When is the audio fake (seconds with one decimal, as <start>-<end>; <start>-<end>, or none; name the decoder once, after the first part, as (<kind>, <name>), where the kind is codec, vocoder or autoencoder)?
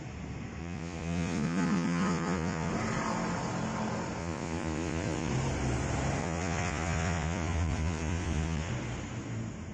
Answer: 0.6-2.7 (vocoder, Vocos); 4.2-5.3; 6.2-8.7